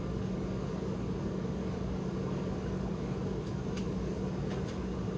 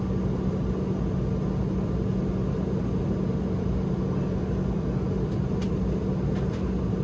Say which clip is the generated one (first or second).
first